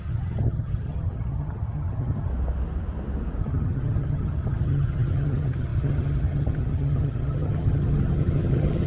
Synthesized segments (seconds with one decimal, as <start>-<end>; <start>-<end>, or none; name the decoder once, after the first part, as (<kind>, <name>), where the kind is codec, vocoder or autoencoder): 0.0-2.3 (vocoder, HiFi-GAN); 3.4-8.9